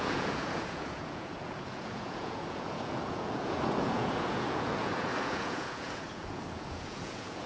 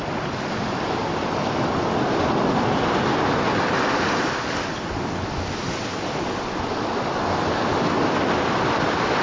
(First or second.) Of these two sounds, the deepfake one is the first